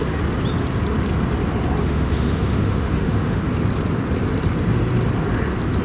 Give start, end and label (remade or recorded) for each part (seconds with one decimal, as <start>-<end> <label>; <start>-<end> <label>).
0.0-1.8 recorded; 1.8-3.4 remade; 3.4-5.8 recorded